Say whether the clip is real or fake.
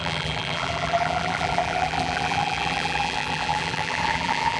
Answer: fake